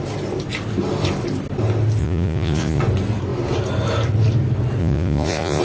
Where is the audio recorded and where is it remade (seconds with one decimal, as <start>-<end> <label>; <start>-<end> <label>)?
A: 0.0-2.0 recorded; 2.0-2.8 remade; 2.8-4.8 recorded; 4.8-5.6 remade